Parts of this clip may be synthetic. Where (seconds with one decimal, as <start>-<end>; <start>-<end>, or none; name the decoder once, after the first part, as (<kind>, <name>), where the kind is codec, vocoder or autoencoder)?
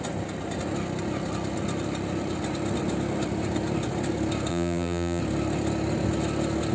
4.5-5.2 (vocoder, BigVGAN v2)